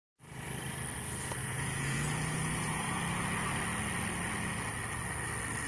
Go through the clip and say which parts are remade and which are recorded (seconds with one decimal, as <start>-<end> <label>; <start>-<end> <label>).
0.0-1.4 recorded; 1.4-3.0 remade; 3.0-5.7 recorded